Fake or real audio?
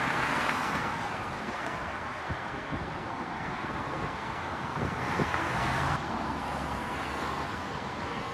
fake